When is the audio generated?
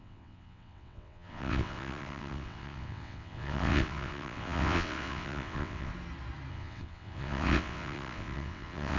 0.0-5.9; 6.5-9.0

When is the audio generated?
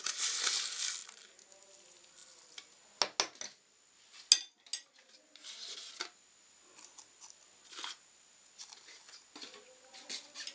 none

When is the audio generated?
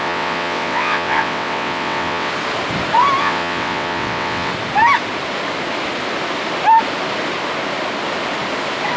0.0-2.3; 3.2-4.5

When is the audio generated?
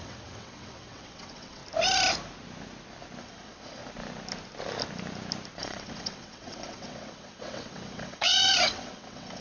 0.0-1.6; 3.2-3.8; 5.6-9.4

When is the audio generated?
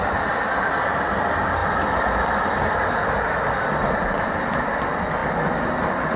none